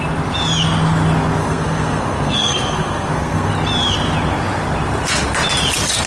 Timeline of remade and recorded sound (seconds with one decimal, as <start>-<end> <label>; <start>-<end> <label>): 0.0-1.4 recorded; 1.4-3.5 remade; 3.5-6.1 recorded